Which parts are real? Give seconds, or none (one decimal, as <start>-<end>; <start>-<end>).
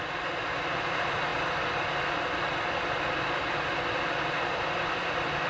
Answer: 1.3-4.3